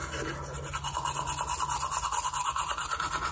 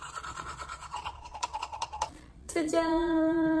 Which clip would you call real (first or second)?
first